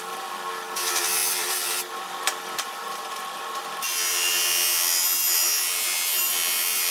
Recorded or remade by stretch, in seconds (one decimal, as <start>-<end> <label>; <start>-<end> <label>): 0.0-6.9 remade